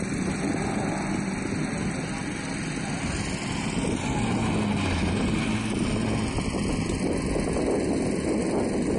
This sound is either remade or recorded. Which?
recorded